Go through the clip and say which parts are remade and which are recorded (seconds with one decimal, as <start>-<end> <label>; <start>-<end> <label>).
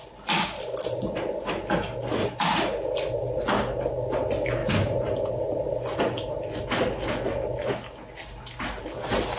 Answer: 0.0-9.4 recorded